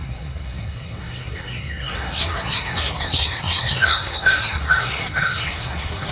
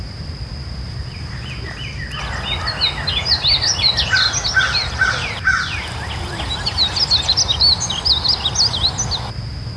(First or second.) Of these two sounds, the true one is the second